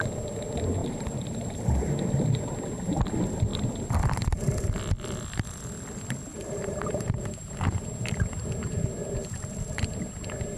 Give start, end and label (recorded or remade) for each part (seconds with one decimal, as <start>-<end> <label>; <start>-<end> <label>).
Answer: 0.0-0.8 recorded; 0.8-1.8 remade; 1.8-6.3 recorded; 6.3-7.9 remade; 7.9-10.6 recorded